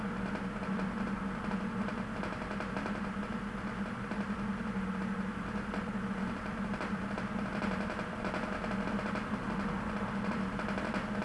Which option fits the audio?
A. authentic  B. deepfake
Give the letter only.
A